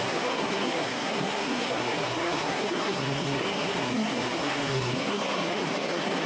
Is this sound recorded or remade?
remade